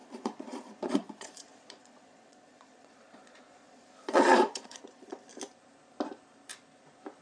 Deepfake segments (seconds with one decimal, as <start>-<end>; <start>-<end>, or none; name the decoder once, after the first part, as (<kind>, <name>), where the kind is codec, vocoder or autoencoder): 0.0-5.3 (vocoder, Vocos)